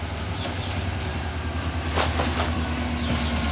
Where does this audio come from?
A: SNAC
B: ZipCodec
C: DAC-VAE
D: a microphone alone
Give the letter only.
D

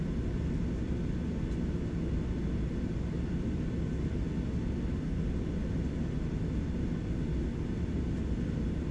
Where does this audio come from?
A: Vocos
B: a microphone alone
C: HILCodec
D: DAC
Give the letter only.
B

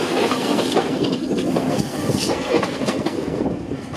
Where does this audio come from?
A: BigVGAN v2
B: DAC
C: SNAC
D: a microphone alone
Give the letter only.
C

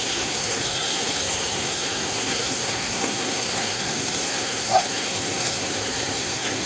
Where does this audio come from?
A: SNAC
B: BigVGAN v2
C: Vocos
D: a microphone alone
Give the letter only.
A